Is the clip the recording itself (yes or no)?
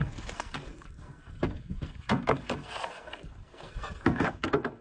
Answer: no